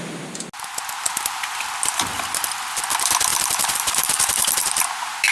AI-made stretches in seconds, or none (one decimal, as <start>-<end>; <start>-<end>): 3.3-4.8